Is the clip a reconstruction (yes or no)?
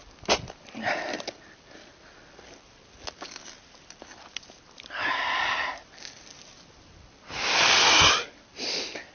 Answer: no